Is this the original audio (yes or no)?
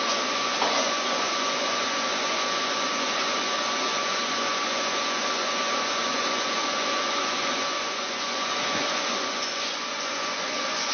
no